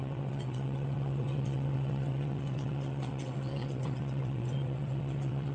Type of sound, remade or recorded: remade